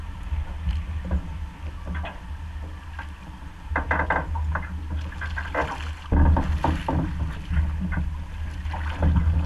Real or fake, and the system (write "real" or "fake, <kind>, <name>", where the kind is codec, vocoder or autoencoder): real